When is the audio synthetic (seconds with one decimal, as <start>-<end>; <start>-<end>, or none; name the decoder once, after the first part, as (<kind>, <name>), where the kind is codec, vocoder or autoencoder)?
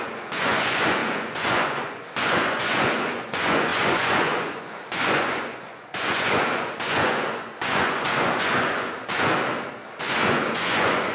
0.0-9.3 (vocoder, Vocos); 10.0-11.1